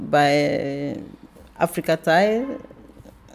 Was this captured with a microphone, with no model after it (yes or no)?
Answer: yes